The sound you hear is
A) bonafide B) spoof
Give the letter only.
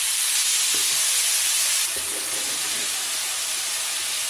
A